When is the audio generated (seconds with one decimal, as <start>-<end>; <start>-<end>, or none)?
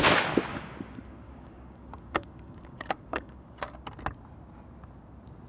0.5-3.8